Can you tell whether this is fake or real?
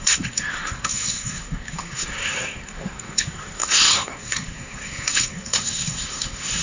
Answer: fake